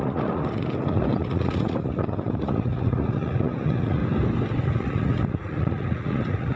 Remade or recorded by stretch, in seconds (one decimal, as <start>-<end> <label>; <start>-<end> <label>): 0.0-4.0 remade; 4.0-4.6 recorded; 4.6-6.6 remade